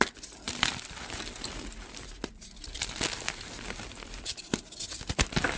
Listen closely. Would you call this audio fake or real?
real